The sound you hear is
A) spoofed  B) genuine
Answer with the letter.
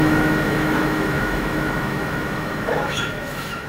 A